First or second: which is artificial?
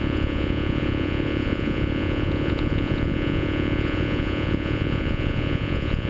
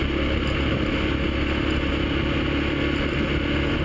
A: first